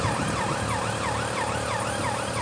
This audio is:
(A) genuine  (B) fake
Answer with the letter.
A